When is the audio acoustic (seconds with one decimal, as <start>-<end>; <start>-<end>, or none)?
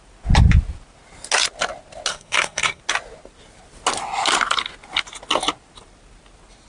0.0-2.1; 2.8-6.7